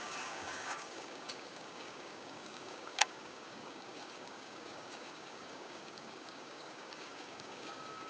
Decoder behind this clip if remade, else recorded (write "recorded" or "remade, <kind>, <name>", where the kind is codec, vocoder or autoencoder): remade, codec, DAC